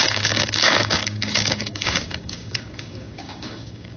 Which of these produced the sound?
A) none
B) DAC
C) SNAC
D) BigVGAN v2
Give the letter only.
B